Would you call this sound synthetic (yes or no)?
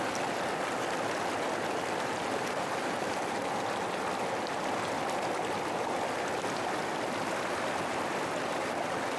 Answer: no